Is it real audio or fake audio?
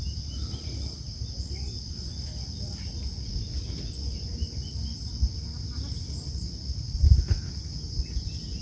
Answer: real